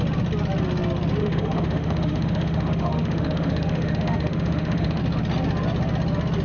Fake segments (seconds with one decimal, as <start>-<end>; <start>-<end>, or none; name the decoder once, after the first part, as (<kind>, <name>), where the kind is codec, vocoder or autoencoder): 1.2-5.0 (autoencoder, DAC-VAE)